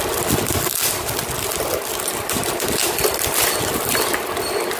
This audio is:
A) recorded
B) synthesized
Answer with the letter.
A